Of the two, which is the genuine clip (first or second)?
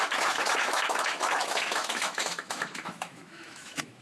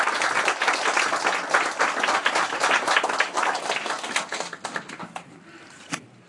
second